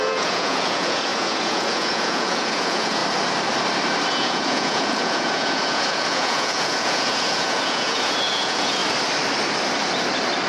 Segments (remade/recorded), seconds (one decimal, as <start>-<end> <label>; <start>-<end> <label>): 0.0-3.0 remade; 3.0-4.1 recorded; 4.1-8.8 remade; 8.8-10.5 recorded